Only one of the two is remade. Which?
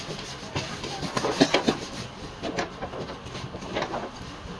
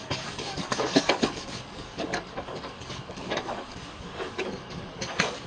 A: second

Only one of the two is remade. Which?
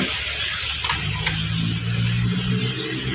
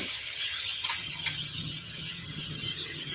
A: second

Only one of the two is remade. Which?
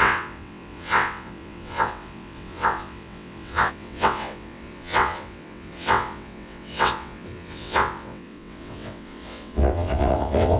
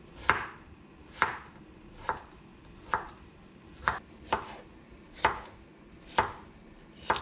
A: first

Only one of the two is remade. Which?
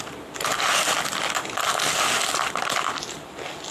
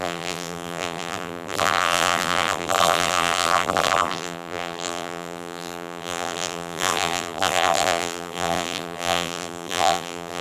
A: second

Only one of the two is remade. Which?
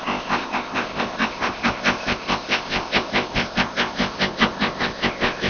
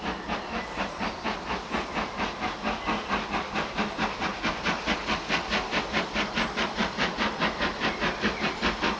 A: first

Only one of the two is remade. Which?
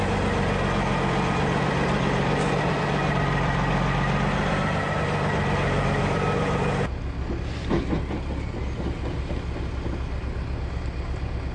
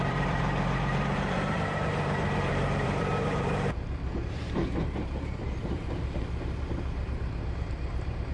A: second